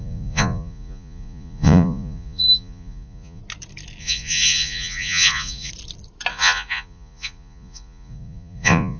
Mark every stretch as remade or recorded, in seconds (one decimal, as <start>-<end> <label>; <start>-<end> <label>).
0.0-3.4 remade; 3.4-4.0 recorded; 4.0-5.7 remade; 5.7-6.3 recorded; 6.3-9.0 remade